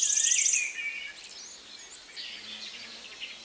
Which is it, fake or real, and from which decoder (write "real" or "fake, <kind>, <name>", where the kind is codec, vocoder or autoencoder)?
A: real